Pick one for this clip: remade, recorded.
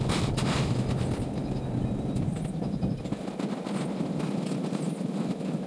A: recorded